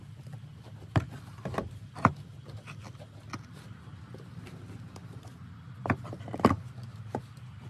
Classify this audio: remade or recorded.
recorded